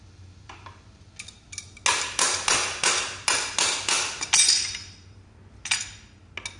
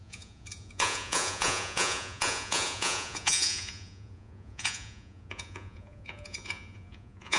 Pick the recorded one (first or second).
first